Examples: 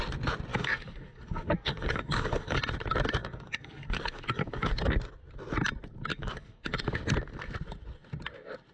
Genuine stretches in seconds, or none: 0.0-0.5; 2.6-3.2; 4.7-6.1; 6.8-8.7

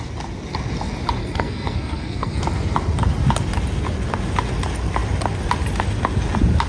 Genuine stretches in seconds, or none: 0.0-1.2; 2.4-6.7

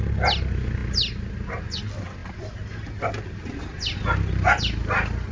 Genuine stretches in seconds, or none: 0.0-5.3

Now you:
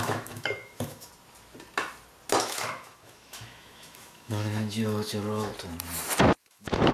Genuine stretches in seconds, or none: 1.1-2.4; 5.5-6.4